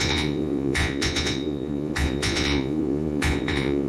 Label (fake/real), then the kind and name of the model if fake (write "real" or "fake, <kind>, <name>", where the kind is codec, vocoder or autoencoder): fake, vocoder, Vocos